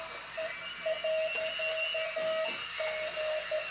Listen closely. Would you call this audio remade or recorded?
recorded